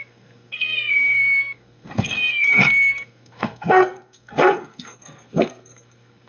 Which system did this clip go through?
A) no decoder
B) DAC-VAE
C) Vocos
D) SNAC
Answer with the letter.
D